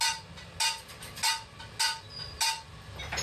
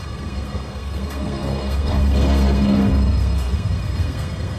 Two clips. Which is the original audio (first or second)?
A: first